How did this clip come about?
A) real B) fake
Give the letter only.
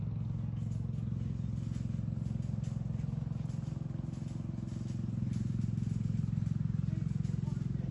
A